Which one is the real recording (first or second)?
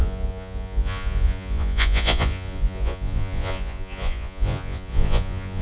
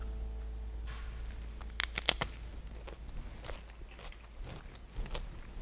second